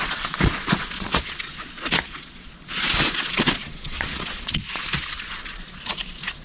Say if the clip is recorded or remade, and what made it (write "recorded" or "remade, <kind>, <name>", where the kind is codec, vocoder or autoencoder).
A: remade, vocoder, Vocos